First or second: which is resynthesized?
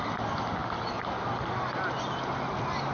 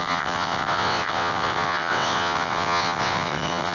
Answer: second